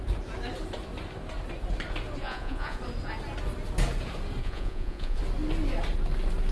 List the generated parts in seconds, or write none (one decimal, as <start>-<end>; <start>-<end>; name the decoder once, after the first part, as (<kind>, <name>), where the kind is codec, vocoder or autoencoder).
2.2-2.8 (vocoder, Vocos); 4.4-5.2